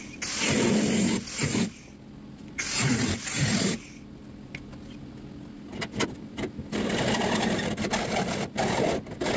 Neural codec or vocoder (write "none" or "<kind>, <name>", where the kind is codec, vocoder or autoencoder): none